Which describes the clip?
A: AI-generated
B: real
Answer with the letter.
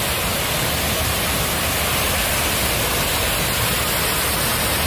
B